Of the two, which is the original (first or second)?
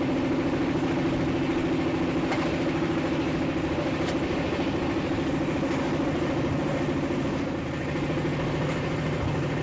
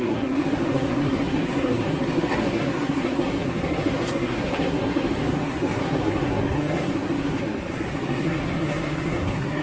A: first